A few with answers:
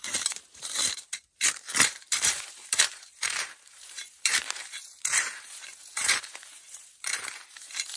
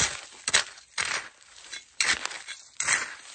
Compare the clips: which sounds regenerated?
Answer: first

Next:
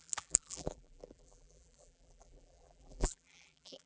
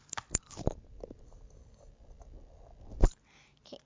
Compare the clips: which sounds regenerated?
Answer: first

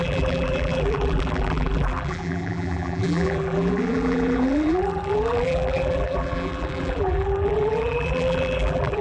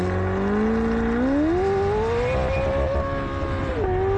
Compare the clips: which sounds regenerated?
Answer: first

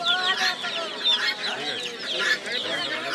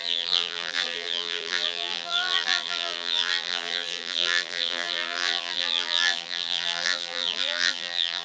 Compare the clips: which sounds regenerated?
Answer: second